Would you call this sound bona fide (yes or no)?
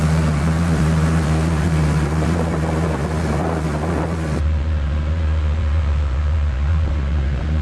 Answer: no